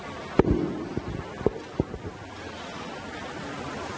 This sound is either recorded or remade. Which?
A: recorded